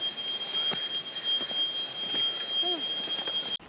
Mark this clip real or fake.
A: real